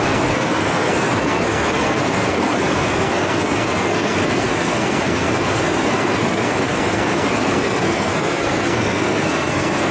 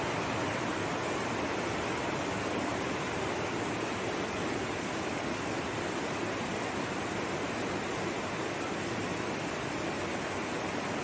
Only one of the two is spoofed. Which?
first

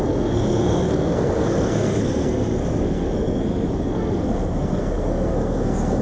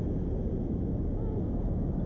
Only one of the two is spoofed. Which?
first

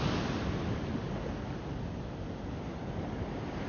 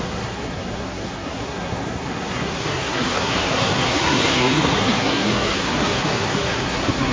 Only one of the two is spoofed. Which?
second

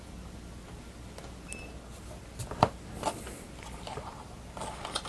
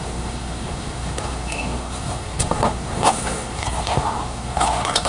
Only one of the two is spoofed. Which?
second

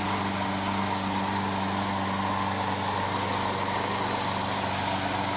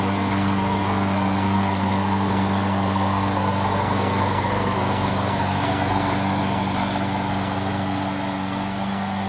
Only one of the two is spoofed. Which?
second